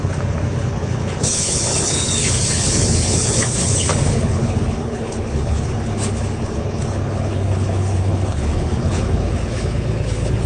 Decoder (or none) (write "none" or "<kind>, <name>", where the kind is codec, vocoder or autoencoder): codec, HILCodec